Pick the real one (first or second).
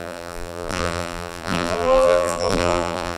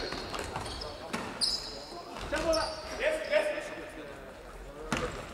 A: second